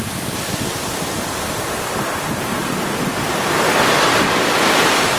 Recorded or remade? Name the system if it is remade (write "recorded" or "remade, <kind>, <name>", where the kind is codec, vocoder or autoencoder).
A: recorded